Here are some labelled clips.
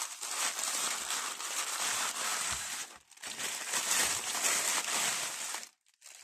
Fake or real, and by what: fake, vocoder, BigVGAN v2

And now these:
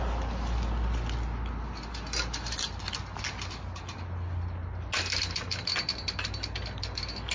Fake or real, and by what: real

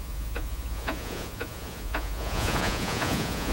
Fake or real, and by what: fake, vocoder, Vocos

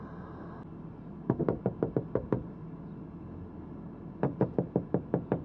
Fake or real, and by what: real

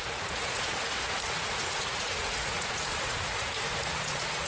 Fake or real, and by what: fake, vocoder, Vocos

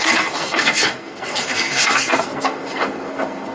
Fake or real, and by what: fake, codec, SNAC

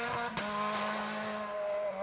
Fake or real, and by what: real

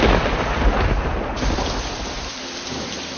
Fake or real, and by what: fake, vocoder, BigVGAN v2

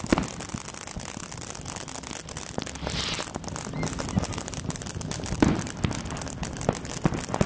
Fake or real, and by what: real